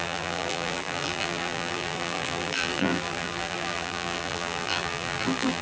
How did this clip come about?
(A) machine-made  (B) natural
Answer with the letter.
A